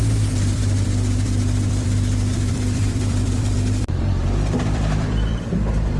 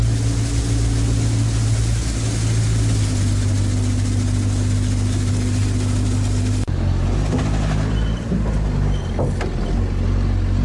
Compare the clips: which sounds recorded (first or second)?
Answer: second